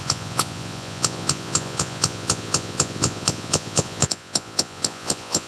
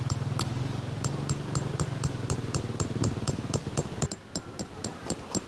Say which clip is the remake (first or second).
first